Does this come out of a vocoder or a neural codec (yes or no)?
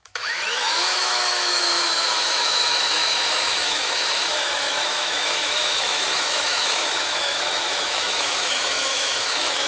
yes